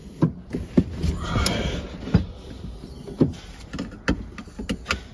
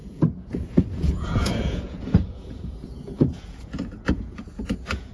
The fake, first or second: second